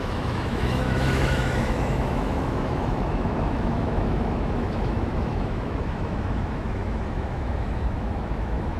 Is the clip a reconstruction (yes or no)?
yes